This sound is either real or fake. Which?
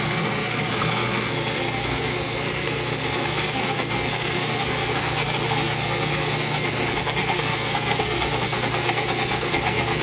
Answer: fake